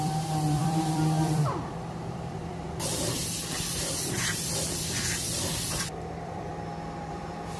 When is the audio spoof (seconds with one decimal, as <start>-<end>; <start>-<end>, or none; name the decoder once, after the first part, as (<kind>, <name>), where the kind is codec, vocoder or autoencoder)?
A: 0.0-6.5 (vocoder, BigVGAN v2); 7.1-7.6